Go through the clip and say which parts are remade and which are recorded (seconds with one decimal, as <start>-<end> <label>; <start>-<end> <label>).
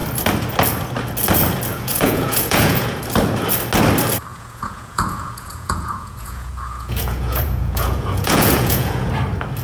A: 0.0-1.7 recorded; 1.7-3.0 remade; 3.0-4.3 recorded; 4.3-9.1 remade; 9.1-9.6 recorded